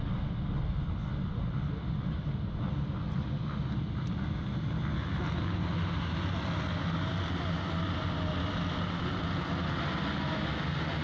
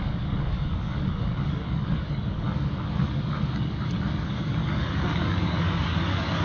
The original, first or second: first